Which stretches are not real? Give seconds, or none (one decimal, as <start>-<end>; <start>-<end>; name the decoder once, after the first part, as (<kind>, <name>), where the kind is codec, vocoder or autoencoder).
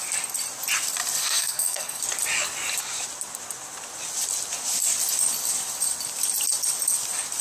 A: 1.2-2.0 (codec, SNAC)